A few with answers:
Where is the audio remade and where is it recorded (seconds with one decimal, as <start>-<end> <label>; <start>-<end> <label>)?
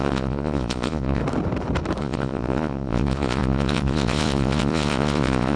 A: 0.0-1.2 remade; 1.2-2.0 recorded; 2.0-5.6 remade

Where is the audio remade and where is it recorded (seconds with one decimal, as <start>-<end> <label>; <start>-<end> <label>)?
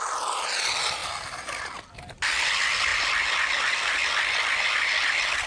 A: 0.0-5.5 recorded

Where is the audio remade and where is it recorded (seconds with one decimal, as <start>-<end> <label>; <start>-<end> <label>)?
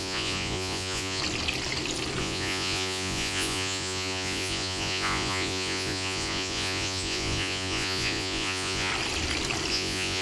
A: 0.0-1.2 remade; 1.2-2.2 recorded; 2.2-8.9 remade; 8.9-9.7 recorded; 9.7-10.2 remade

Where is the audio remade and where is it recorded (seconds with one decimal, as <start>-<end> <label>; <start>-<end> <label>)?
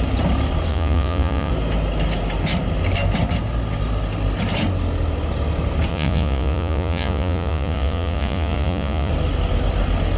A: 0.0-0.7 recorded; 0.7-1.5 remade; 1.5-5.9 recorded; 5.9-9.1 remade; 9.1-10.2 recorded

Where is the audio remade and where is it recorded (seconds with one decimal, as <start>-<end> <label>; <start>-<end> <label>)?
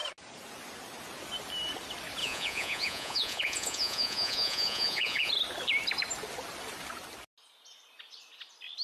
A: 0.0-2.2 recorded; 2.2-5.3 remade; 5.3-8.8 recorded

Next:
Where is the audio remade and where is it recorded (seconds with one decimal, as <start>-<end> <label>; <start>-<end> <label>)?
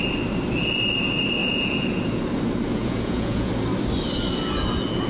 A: 0.0-1.4 recorded; 1.4-2.2 remade; 2.2-2.7 recorded; 2.7-3.5 remade; 3.5-5.1 recorded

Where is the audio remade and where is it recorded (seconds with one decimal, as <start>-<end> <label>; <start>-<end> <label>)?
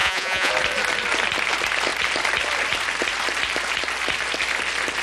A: 0.0-0.5 remade; 0.5-5.0 recorded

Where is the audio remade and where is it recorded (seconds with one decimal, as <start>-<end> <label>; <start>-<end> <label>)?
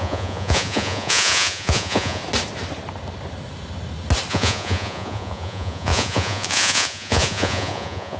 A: 0.0-2.2 remade; 2.2-4.3 recorded; 4.3-8.2 remade